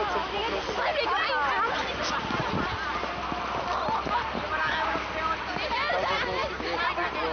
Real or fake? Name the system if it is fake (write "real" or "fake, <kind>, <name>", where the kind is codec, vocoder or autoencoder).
real